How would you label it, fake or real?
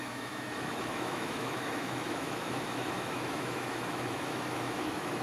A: fake